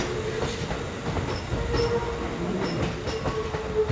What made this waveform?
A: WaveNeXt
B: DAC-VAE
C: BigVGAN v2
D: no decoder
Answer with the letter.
D